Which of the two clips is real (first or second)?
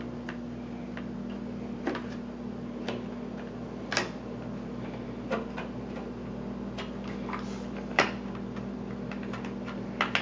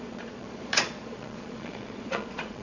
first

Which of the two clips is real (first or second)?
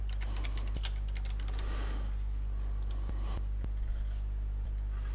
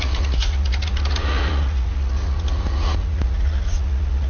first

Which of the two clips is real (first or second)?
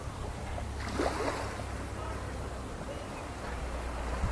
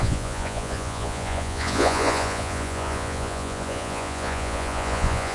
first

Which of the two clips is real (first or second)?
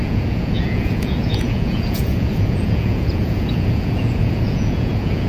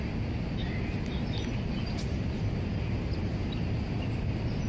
second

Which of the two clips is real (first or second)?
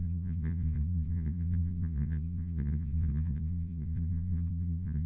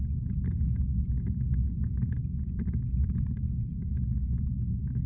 second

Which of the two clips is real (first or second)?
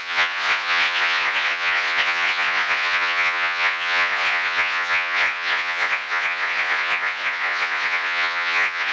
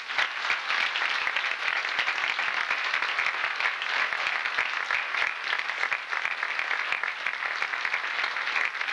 second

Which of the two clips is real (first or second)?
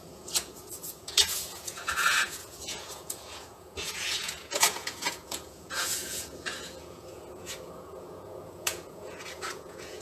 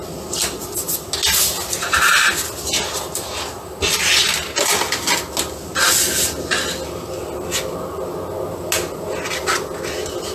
second